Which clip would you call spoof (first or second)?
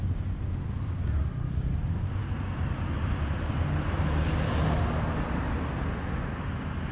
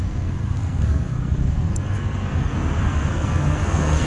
second